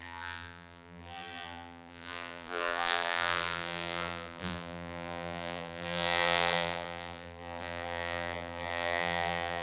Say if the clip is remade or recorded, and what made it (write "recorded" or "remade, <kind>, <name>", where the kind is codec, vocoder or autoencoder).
remade, vocoder, BigVGAN v2